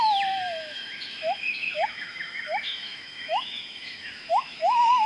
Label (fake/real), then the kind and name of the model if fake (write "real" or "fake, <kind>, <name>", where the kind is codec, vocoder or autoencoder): fake, autoencoder, DAC-VAE